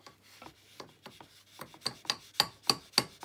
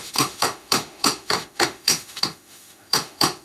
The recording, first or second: first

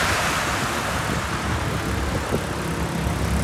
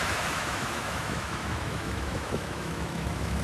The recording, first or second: first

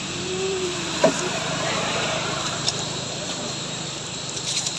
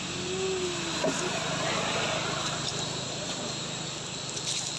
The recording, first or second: second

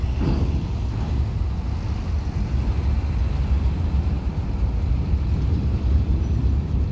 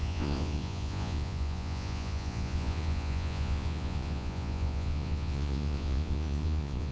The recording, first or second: first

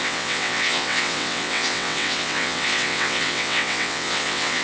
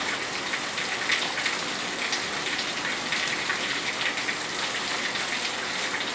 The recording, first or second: second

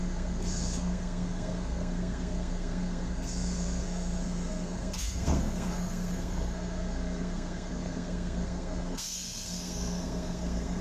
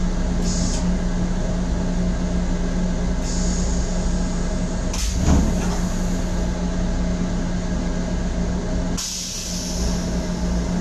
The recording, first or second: second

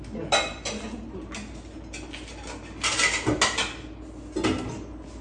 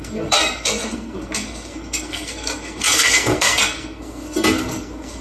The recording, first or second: first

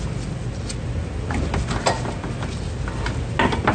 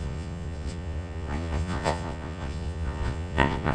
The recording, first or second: first